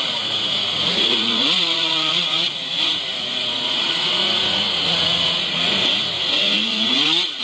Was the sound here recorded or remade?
remade